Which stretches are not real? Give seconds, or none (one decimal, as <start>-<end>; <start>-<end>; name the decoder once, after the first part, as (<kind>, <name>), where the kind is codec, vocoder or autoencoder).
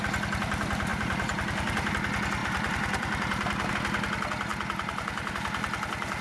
0.9-1.9 (vocoder, BigVGAN v2); 2.4-3.7; 4.5-5.3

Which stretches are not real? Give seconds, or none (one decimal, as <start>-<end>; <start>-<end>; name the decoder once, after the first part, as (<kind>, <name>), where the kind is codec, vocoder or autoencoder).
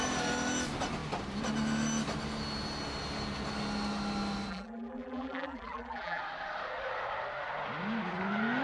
4.5-6.2 (vocoder, BigVGAN v2)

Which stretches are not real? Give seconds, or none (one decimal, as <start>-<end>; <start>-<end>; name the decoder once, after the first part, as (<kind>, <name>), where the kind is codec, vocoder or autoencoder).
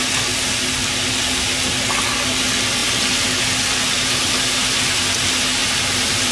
5.6-6.3 (vocoder, BigVGAN v2)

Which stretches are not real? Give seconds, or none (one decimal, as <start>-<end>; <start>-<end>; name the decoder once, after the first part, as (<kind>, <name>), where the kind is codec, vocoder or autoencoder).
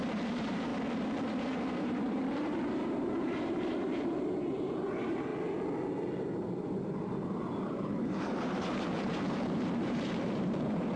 0.0-5.3 (vocoder, BigVGAN v2); 7.6-11.0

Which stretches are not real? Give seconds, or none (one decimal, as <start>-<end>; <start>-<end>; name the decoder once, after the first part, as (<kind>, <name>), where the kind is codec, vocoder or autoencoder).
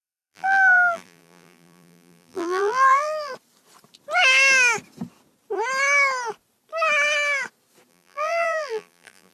0.0-3.3 (vocoder, BigVGAN v2); 7.9-9.3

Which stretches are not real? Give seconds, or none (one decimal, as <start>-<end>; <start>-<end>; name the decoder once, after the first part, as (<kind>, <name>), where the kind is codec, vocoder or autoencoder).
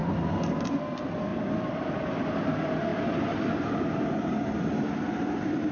0.0-0.6 (vocoder, BigVGAN v2); 1.3-2.2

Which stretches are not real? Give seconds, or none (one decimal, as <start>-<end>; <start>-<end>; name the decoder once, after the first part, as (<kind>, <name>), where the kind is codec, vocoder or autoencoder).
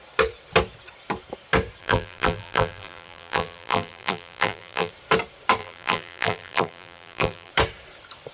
1.8-4.9 (vocoder, BigVGAN v2); 5.6-7.5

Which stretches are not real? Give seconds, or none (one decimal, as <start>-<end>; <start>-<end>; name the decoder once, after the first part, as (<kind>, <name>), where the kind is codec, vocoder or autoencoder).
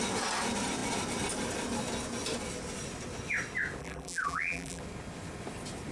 3.8-4.8 (vocoder, BigVGAN v2)